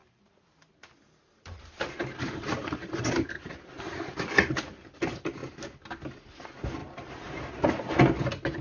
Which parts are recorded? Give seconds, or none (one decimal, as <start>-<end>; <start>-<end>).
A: 3.5-6.8; 7.5-8.6